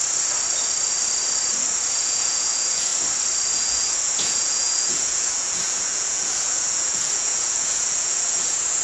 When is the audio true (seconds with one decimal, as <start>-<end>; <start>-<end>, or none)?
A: 0.0-1.9; 2.9-3.5